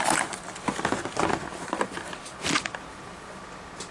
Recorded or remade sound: recorded